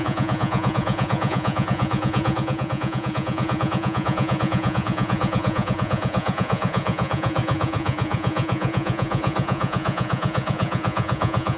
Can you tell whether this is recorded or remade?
remade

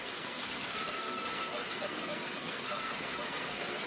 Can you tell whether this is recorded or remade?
remade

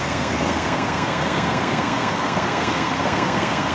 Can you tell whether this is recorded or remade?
remade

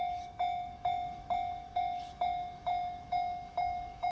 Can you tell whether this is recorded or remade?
remade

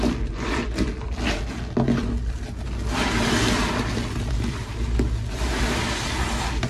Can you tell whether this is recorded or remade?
recorded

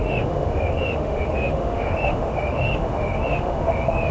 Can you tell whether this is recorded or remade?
remade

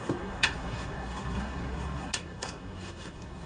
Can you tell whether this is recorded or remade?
remade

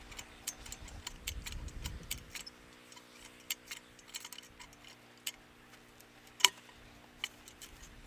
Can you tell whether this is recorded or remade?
recorded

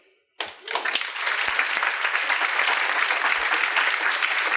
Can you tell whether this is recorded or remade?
recorded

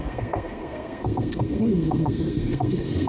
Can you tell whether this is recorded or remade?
remade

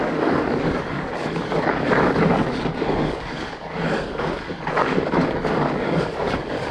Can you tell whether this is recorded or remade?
remade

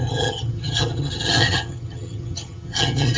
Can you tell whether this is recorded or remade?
remade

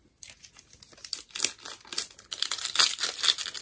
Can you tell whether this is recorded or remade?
recorded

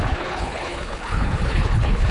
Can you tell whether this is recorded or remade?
remade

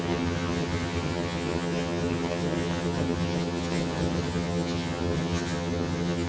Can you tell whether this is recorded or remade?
remade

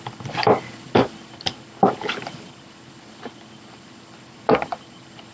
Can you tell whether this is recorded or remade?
recorded